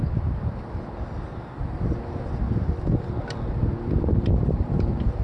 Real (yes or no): no